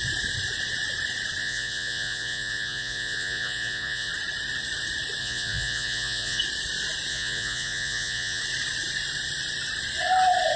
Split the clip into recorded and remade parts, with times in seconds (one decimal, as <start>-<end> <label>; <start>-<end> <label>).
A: 0.0-1.4 recorded; 1.4-4.1 remade; 4.1-5.2 recorded; 5.2-6.4 remade; 6.4-7.1 recorded; 7.1-8.4 remade; 8.4-10.6 recorded